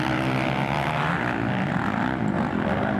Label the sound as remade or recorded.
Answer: recorded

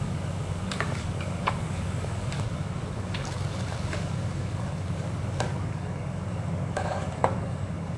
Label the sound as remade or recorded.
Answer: remade